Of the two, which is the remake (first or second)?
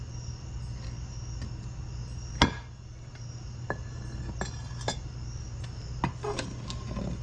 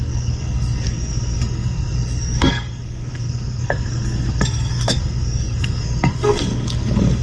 second